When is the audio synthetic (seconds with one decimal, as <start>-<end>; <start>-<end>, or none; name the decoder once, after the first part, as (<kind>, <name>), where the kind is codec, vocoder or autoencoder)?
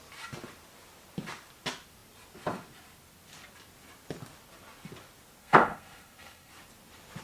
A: 5.4-6.5 (codec, SNAC)